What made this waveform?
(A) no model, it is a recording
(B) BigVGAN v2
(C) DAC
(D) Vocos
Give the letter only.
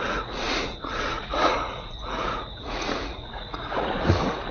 D